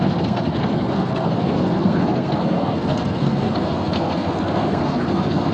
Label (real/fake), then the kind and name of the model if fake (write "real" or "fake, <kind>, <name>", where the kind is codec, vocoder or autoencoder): fake, codec, SNAC